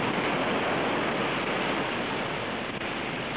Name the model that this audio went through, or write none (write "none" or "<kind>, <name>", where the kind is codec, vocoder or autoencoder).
none